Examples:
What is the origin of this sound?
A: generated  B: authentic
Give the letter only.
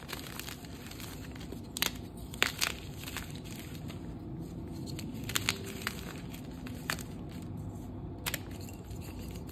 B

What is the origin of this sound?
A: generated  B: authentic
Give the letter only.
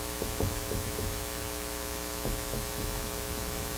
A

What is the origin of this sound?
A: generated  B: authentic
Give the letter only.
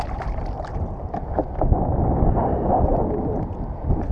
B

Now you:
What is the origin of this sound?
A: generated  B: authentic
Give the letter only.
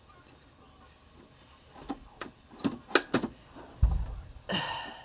B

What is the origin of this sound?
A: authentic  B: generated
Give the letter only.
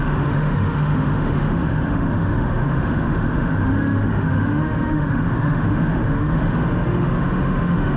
B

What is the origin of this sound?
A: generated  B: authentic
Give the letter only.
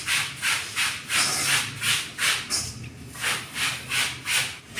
B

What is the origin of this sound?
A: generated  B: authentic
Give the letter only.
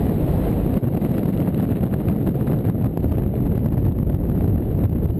B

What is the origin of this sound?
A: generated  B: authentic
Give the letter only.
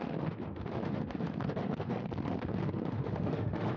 A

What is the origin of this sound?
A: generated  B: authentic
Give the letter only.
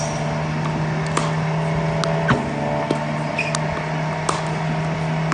B